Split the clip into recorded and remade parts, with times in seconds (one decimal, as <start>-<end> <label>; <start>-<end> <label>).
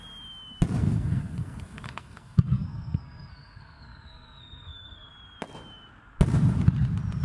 0.0-0.8 recorded; 0.8-5.1 remade; 5.1-7.2 recorded